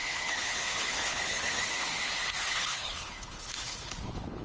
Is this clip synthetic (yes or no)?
yes